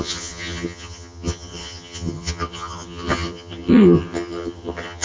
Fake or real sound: fake